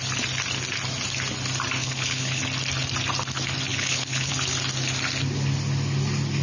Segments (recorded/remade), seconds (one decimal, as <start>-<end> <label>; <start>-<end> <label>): 0.0-1.8 recorded; 1.8-2.4 remade; 2.4-3.7 recorded; 3.7-4.3 remade; 4.3-6.4 recorded